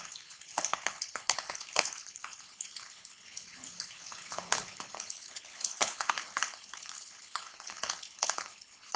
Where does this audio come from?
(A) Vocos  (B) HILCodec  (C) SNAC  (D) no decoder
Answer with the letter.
B